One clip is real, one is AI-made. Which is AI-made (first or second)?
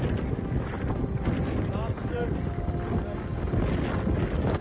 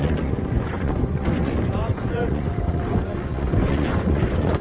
second